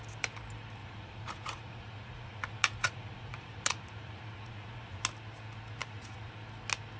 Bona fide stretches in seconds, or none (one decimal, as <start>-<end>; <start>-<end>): 0.0-0.8; 5.0-5.8; 6.3-7.0

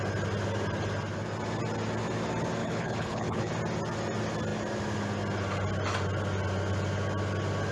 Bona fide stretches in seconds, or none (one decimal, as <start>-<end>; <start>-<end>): 0.0-2.6; 3.5-7.7

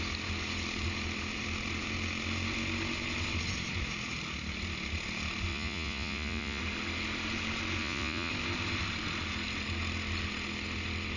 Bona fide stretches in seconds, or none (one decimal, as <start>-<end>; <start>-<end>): 0.0-5.5; 6.6-7.8; 8.3-11.2

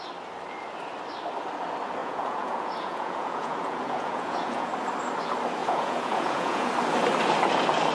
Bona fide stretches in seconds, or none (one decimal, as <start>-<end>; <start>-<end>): 0.0-2.0; 4.7-5.6; 6.7-7.9